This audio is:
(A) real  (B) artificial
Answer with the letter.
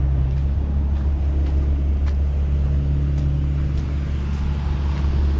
A